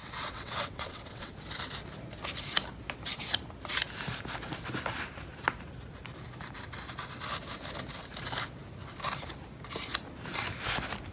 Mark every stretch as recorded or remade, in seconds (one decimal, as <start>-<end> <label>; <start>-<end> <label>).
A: 0.0-1.3 remade; 1.3-11.1 recorded